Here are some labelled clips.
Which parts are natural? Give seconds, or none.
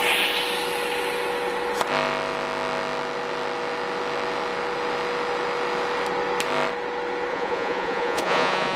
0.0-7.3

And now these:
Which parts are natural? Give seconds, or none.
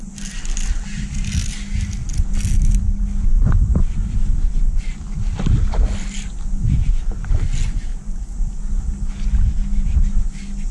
1.2-2.0; 6.9-7.9; 8.5-10.7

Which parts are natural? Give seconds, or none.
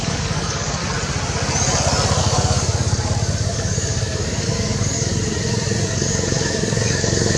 0.8-2.2; 5.1-5.8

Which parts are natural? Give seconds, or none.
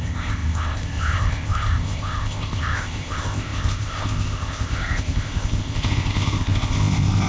none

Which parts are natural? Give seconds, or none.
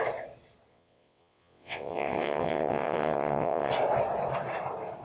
0.0-0.7; 3.7-5.0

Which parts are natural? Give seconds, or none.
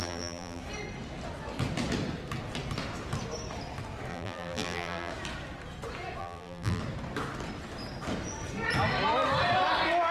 0.6-4.1; 5.1-6.2; 6.8-10.1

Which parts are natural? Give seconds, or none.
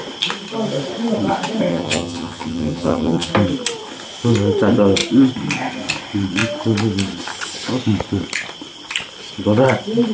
0.0-1.7; 3.3-10.1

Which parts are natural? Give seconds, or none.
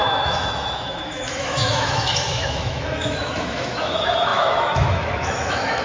none